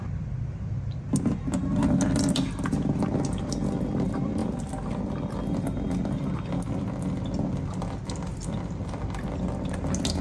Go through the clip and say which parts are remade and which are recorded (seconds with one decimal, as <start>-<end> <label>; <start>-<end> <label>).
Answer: 0.0-10.2 recorded